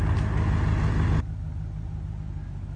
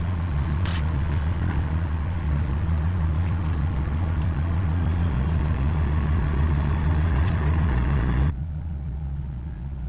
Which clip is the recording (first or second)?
first